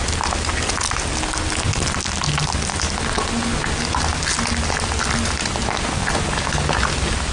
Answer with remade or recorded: recorded